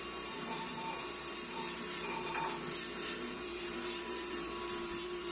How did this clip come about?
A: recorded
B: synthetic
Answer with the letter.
B